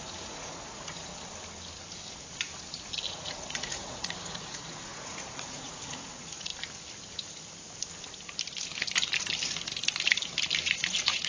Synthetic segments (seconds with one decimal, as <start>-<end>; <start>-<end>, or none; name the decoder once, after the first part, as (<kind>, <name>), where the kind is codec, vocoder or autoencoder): 0.0-1.1 (vocoder, Vocos); 3.1-6.5; 10.6-11.3